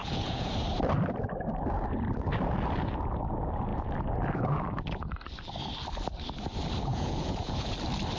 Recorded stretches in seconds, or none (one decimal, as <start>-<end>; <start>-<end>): 0.5-6.9; 7.7-8.2